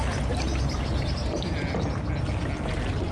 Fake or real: real